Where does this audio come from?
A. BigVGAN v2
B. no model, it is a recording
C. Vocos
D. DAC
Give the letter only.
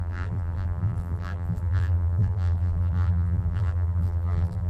A